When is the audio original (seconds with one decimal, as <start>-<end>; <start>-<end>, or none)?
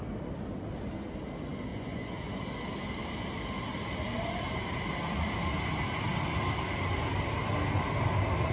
0.0-1.7; 2.3-8.5